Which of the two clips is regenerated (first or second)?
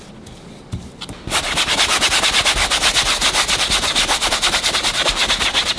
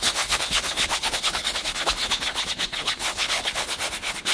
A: second